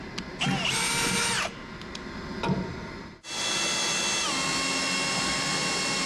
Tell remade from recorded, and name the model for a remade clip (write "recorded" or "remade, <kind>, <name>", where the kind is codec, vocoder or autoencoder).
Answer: recorded